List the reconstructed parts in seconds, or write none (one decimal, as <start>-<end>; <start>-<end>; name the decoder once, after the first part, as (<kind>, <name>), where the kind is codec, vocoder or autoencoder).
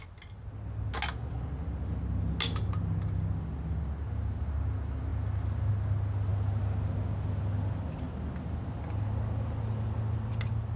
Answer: none